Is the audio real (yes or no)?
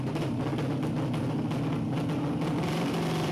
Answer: yes